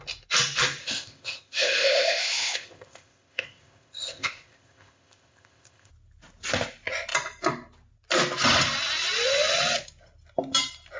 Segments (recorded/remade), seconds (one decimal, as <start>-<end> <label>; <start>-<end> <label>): 0.0-0.8 recorded; 0.8-5.9 remade; 5.9-11.0 recorded